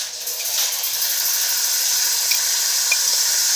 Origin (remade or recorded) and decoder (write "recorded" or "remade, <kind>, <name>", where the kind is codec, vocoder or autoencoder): recorded